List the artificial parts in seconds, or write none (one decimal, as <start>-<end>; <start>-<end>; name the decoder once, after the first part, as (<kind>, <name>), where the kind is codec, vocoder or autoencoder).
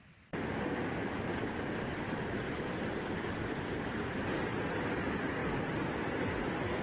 none